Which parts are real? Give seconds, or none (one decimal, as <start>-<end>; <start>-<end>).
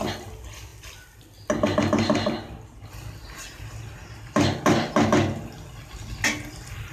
0.0-6.9